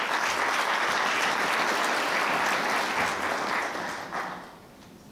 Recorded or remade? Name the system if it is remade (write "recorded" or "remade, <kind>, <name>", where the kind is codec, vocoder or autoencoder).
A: recorded